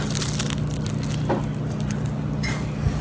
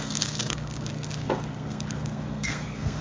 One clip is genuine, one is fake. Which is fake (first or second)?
second